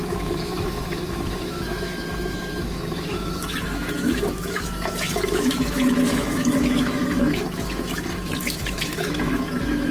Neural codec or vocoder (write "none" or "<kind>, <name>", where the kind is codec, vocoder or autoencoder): autoencoder, DAC-VAE